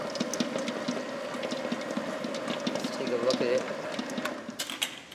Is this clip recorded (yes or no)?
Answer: yes